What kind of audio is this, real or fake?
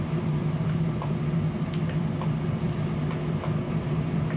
real